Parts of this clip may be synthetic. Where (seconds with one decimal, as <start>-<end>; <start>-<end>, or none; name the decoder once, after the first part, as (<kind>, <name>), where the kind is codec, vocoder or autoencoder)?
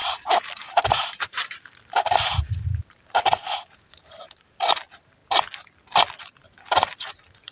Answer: 0.0-5.2 (vocoder, BigVGAN v2); 6.2-7.5